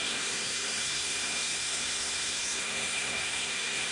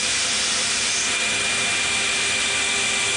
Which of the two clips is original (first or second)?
second